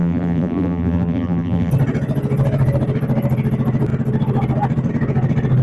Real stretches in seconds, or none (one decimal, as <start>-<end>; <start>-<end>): 1.7-5.6